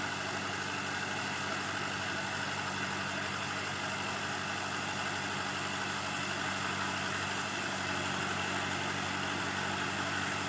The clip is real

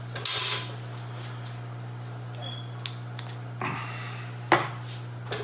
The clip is real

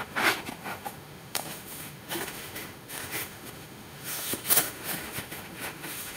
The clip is fake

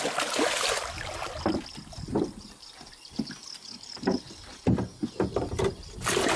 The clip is real